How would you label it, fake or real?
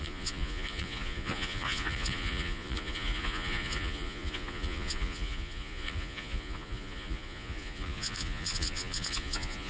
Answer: fake